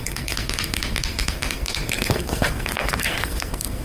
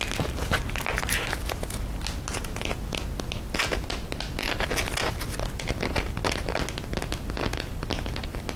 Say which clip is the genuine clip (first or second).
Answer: second